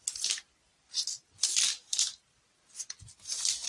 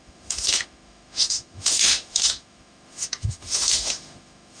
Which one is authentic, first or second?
first